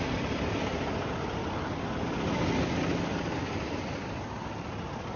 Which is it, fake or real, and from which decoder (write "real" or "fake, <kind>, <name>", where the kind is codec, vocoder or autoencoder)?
real